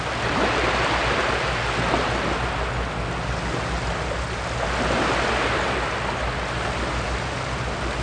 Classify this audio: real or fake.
real